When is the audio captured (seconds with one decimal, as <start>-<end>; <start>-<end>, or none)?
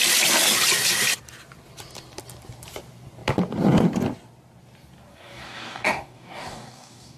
0.0-5.1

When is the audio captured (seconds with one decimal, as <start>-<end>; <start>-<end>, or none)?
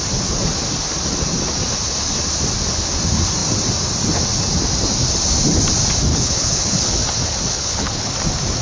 0.0-6.1; 6.9-7.5; 8.1-8.6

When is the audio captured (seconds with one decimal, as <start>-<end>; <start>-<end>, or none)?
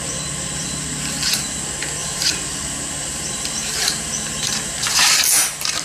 0.0-2.0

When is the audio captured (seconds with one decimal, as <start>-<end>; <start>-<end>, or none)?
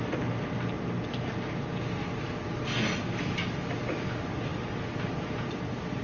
0.0-6.0